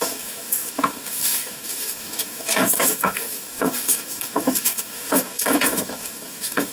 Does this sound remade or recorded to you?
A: remade